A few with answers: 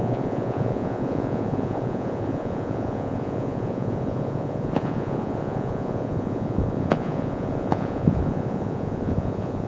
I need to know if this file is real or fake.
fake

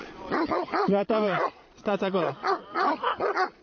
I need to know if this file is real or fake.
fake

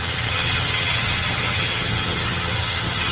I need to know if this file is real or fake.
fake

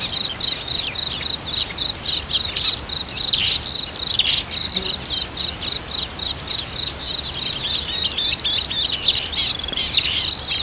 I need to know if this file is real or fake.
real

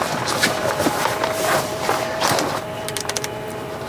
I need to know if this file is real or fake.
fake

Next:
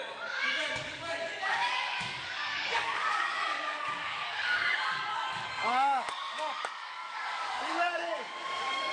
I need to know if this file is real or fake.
fake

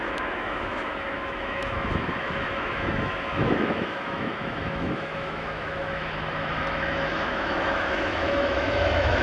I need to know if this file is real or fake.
fake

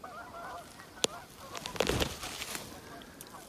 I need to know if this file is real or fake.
real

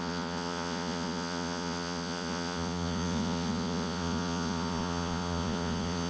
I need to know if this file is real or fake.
fake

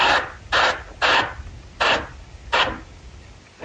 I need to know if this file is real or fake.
real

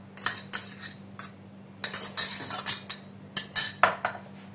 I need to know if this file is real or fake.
real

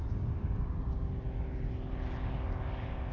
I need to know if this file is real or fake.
real